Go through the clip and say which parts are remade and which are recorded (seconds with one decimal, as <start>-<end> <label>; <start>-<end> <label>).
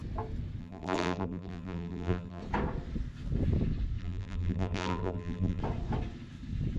0.0-0.6 recorded; 0.6-2.4 remade; 2.4-4.0 recorded; 4.0-5.6 remade; 5.6-6.8 recorded